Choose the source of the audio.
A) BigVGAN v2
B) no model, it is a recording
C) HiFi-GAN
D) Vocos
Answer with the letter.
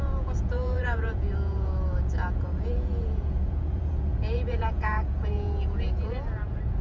D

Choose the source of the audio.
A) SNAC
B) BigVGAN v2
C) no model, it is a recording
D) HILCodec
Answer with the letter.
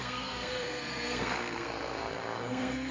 A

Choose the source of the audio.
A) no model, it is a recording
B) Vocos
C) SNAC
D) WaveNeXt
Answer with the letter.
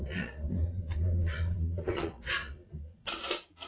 B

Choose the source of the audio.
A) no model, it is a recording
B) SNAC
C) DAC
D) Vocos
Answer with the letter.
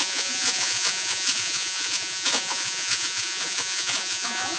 D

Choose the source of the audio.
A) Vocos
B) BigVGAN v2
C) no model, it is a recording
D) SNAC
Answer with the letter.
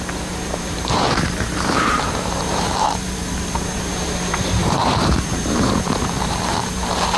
B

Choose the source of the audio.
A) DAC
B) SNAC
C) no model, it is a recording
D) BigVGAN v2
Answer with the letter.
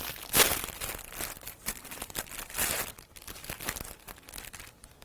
D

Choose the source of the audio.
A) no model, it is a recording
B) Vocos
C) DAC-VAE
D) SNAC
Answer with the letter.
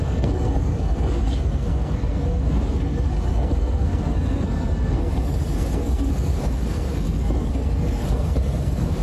D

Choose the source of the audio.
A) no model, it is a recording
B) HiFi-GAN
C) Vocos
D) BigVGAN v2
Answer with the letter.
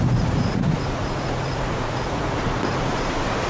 C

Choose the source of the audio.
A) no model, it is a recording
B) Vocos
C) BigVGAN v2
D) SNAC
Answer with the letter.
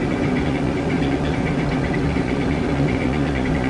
B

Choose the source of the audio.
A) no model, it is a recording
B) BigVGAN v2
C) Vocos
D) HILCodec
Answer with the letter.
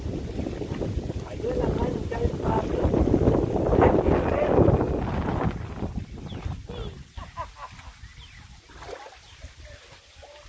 A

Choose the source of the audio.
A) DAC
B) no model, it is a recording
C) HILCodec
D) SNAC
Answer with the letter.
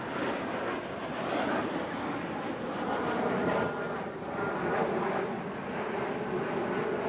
B